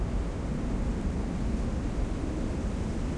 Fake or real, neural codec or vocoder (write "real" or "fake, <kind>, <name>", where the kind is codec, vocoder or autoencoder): real